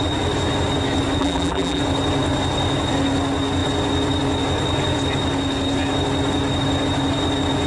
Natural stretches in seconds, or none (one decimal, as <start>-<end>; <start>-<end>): 0.0-1.2; 1.8-7.7